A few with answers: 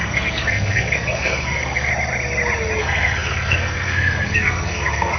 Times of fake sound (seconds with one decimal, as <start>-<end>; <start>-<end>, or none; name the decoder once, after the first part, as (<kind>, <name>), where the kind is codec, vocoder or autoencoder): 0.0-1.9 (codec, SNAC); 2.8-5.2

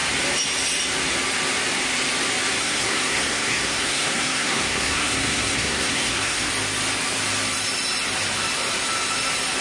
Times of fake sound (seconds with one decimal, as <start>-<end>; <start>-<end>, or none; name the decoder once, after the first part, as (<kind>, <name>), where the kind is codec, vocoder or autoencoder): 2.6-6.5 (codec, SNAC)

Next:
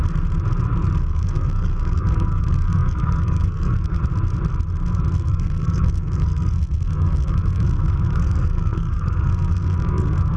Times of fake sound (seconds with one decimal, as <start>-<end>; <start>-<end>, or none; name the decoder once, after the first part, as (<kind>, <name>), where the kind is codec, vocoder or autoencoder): 1.0-4.0 (codec, SNAC); 5.2-10.4

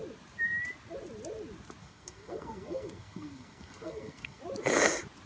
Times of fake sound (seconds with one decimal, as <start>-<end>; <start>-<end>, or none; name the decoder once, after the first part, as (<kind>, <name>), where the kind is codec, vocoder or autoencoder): 1.8-4.4 (codec, SNAC)

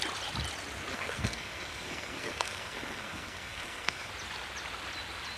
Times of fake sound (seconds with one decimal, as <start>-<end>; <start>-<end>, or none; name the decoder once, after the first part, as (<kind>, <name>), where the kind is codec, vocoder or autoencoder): 0.9-4.1 (codec, SNAC)

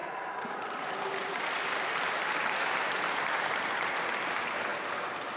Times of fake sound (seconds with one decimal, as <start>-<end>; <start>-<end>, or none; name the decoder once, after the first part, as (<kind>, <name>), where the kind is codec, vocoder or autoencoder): none